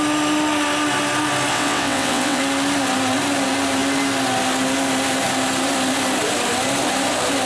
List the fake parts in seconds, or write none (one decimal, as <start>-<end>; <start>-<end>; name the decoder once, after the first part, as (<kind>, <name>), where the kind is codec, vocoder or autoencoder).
1.5-2.4 (vocoder, WaveNeXt)